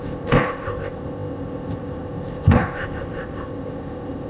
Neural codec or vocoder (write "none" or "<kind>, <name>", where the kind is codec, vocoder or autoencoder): codec, ZipCodec